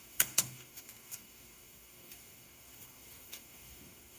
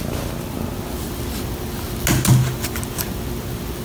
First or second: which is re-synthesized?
first